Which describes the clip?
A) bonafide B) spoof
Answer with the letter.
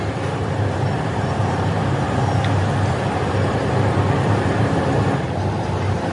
B